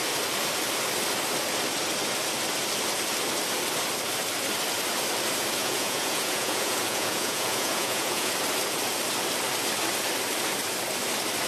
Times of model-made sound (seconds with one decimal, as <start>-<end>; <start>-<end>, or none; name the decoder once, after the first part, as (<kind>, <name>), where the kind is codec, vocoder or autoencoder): 5.6-8.3 (vocoder, Vocos)